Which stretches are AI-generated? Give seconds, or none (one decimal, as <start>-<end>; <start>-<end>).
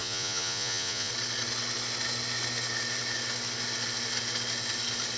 0.0-1.1